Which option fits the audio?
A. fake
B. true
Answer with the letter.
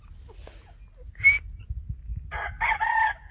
B